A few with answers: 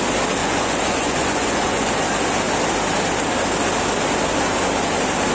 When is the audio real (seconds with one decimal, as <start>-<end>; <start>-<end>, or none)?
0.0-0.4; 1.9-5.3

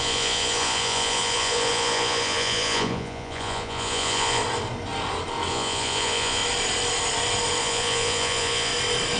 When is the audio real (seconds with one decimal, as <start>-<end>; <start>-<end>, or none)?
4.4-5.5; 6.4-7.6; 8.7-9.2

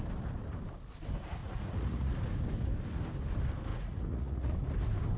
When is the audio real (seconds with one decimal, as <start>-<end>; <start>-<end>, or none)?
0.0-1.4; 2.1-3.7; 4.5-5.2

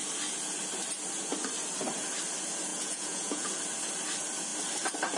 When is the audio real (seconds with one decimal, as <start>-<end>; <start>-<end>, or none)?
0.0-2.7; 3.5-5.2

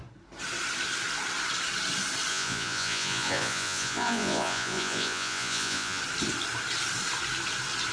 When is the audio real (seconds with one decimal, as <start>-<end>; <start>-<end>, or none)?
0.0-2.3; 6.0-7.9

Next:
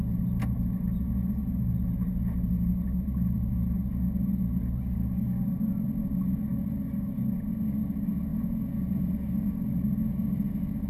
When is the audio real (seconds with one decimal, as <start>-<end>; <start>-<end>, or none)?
0.0-8.3; 9.1-10.9